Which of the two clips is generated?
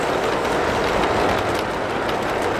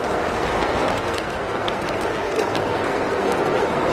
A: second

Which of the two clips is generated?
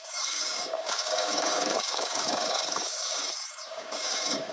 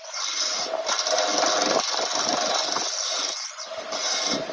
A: first